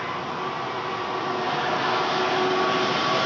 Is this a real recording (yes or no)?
yes